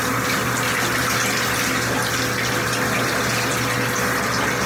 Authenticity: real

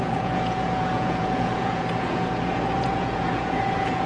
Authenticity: fake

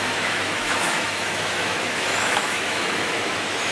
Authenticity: fake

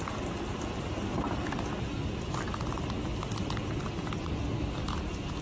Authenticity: real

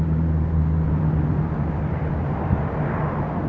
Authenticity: real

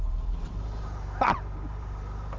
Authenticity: fake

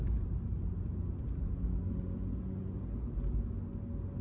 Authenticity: real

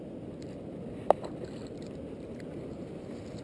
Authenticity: real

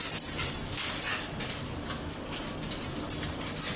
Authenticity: real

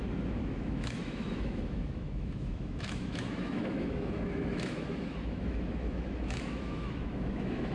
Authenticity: fake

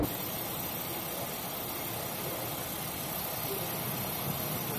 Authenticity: real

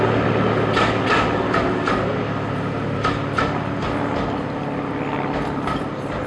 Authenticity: real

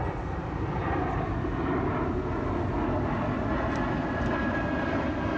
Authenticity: real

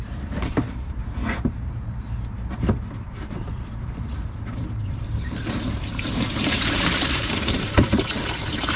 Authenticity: fake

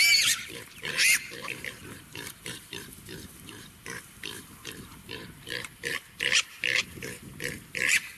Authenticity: fake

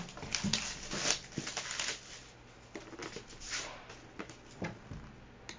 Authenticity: real